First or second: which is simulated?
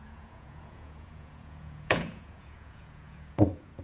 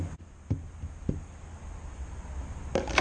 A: first